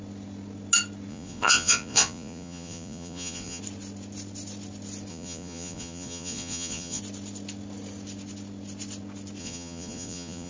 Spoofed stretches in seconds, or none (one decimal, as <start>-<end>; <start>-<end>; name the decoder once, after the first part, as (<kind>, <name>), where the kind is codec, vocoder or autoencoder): 1.1-3.6 (vocoder, Vocos); 5.1-7.0; 9.4-10.5